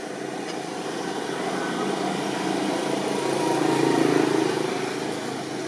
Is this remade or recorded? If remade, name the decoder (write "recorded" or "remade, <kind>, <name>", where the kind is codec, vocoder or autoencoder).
recorded